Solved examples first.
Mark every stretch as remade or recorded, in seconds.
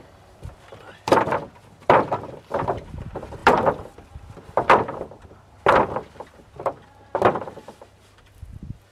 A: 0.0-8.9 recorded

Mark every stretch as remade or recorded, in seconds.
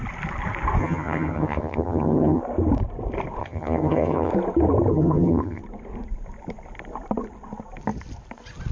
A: 0.0-0.8 recorded; 0.8-2.4 remade; 2.4-3.4 recorded; 3.4-4.3 remade; 4.3-4.9 recorded; 4.9-5.6 remade; 5.6-8.7 recorded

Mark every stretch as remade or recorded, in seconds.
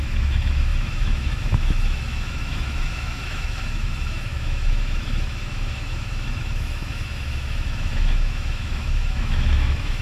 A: 0.0-10.0 remade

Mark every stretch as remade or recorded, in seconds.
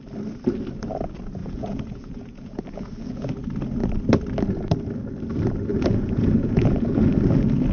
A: 0.0-1.4 recorded; 1.4-3.3 remade; 3.3-5.7 recorded; 5.7-7.1 remade; 7.1-7.7 recorded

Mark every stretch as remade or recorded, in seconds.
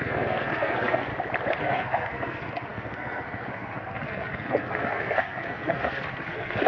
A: 0.0-1.1 remade; 1.1-1.6 recorded; 1.6-6.7 remade